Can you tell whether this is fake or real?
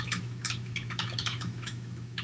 fake